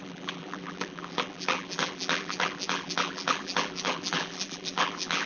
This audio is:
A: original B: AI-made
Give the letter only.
B